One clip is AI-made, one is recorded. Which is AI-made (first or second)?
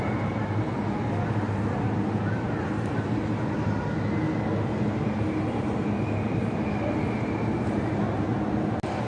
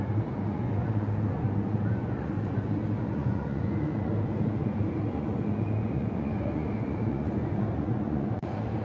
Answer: second